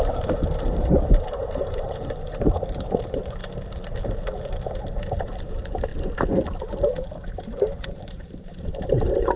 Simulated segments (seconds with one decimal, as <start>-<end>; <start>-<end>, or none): 0.0-3.4; 5.0-5.9; 7.9-9.4